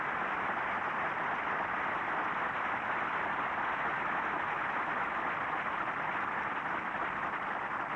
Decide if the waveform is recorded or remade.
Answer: recorded